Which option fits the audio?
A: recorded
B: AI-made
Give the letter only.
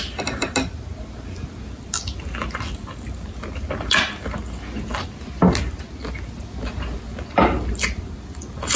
A